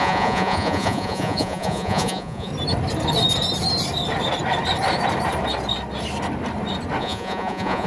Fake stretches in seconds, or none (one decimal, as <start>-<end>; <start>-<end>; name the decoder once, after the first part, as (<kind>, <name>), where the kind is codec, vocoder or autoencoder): 0.0-2.5 (vocoder, Vocos); 7.0-7.9